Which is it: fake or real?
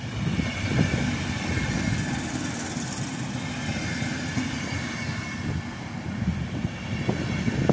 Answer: real